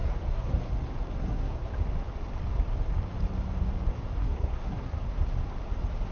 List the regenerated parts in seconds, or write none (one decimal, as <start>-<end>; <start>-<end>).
0.0-0.7; 1.2-1.7; 4.2-5.1

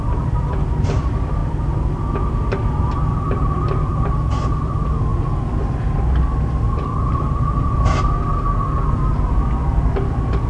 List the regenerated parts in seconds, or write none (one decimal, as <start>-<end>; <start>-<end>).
0.0-1.4; 2.8-5.1; 6.2-8.3; 8.9-10.5

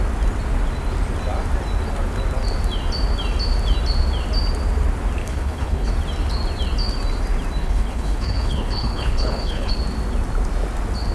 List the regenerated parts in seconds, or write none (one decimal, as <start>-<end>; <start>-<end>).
5.2-5.9; 7.6-9.7

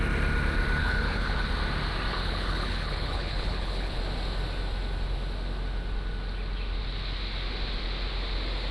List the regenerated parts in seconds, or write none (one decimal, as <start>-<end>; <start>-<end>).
0.8-1.5; 2.1-4.0